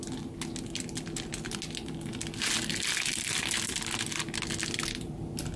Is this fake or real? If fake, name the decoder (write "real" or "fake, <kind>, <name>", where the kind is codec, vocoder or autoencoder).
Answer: real